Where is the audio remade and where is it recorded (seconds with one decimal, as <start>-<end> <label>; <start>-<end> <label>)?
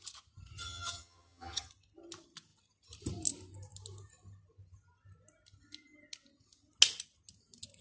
0.0-0.6 recorded; 0.6-1.7 remade; 1.7-7.8 recorded